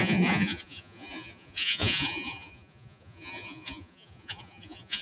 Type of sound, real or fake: fake